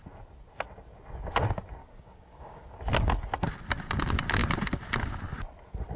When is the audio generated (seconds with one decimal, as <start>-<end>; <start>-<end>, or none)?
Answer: 1.8-2.7